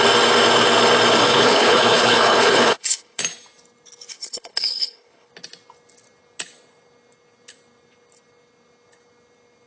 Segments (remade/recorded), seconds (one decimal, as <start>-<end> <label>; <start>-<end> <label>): 0.0-1.2 recorded; 1.2-3.2 remade; 3.2-4.1 recorded; 4.1-5.3 remade; 5.3-9.7 recorded